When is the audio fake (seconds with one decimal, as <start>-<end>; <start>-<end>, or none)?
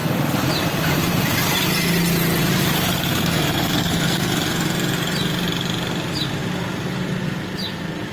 3.1-4.3